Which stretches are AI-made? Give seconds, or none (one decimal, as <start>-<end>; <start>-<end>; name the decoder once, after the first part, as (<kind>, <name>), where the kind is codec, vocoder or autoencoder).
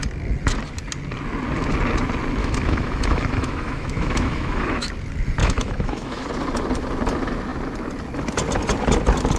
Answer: 2.4-4.9 (autoencoder, DAC-VAE); 5.4-6.3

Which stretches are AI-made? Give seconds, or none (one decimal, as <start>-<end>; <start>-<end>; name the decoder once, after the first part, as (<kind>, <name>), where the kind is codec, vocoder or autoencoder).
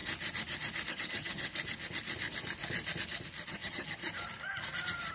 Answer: 0.9-1.5 (vocoder, HiFi-GAN); 3.5-4.0